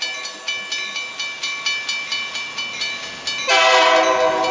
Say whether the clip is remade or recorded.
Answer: recorded